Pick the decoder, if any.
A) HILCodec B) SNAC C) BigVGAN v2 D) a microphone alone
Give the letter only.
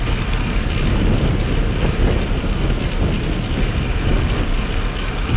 D